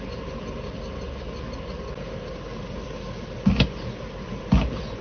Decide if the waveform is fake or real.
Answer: real